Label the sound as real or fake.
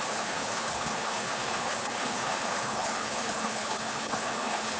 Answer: fake